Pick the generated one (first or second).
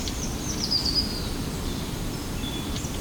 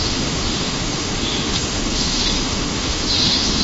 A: second